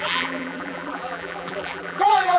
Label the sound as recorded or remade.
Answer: remade